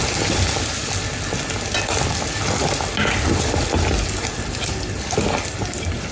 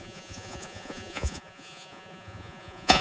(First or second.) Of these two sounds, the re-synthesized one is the second